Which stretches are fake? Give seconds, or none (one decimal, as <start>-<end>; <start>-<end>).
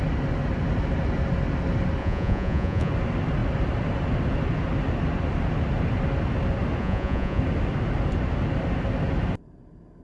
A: 2.0-2.9; 6.8-7.4